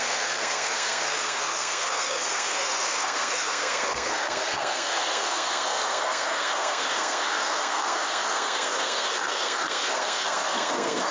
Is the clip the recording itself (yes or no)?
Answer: no